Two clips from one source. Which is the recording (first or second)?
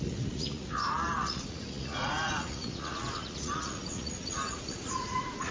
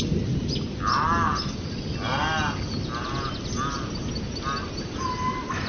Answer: second